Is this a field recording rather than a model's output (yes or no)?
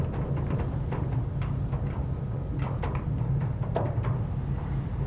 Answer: yes